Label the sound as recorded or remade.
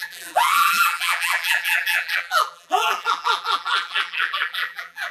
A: remade